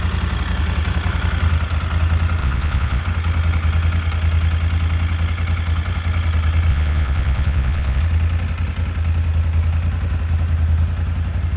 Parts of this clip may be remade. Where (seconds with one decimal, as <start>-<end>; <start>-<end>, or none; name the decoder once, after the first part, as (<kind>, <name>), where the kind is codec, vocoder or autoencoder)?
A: 2.4-3.0 (vocoder, Vocos); 6.7-8.0